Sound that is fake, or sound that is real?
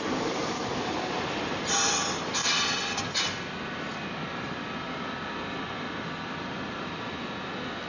real